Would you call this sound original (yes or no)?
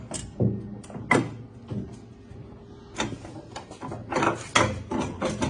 yes